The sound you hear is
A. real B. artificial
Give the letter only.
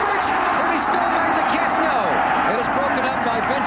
A